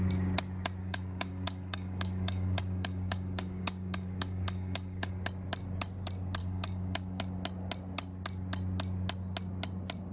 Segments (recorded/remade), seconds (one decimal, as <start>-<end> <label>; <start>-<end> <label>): 0.0-0.8 recorded; 0.8-5.1 remade; 5.1-6.4 recorded; 6.4-7.2 remade; 7.2-10.1 recorded